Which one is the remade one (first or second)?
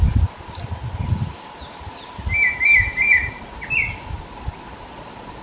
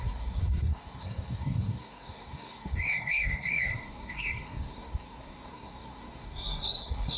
second